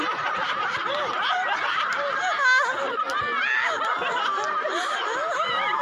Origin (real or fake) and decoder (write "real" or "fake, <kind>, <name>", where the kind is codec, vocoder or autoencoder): real